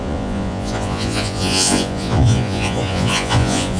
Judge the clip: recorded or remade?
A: remade